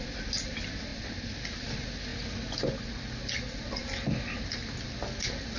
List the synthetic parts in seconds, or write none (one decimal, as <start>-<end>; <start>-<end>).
none